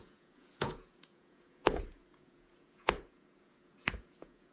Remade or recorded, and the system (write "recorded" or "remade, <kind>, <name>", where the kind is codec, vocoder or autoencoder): remade, vocoder, Vocos